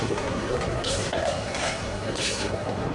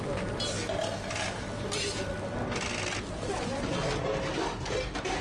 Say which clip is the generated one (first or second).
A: first